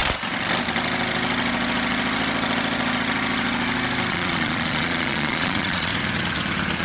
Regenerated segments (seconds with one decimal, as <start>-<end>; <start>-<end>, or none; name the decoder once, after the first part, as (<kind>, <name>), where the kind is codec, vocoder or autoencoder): 4.1-5.9 (vocoder, Vocos)